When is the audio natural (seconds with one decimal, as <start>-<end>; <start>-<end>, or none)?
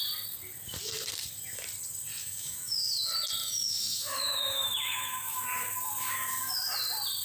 0.0-2.2; 2.9-3.4; 6.5-7.2